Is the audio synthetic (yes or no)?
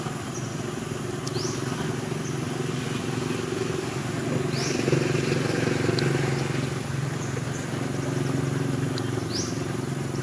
no